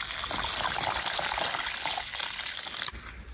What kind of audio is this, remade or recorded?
recorded